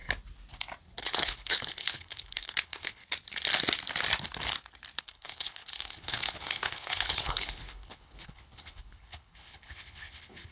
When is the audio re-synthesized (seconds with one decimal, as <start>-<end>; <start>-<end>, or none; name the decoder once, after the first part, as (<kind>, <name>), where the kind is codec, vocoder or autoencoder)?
1.0-3.0 (codec, HILCodec); 5.0-10.5